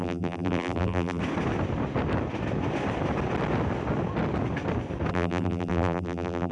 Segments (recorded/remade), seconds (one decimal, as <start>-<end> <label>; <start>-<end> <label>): 0.0-1.2 remade; 1.2-5.1 recorded; 5.1-6.5 remade